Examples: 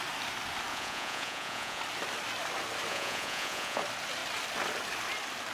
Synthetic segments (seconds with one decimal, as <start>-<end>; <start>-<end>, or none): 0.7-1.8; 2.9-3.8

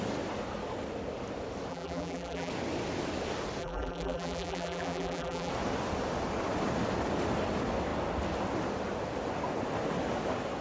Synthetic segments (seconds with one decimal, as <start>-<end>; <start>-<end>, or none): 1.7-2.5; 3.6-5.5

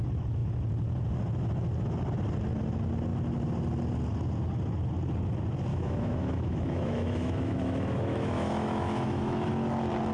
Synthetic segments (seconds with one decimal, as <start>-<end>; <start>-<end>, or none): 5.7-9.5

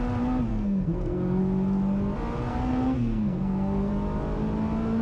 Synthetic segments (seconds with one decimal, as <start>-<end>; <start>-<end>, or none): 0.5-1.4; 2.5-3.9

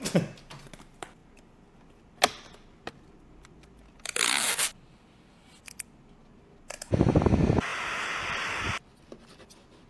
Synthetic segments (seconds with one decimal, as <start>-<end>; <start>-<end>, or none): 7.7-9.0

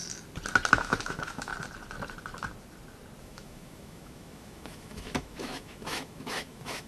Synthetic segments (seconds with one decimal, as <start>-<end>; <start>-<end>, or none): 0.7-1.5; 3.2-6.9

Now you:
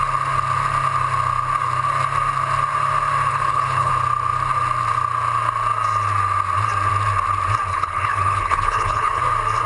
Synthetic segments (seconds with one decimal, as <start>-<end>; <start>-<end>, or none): 3.3-3.9; 7.7-9.2